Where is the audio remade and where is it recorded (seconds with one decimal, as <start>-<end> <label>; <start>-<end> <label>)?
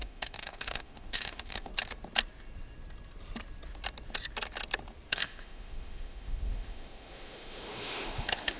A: 0.0-1.7 remade; 1.7-5.1 recorded; 5.1-8.6 remade